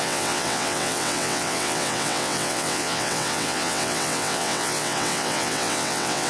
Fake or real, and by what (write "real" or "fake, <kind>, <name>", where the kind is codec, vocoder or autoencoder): fake, vocoder, WaveNeXt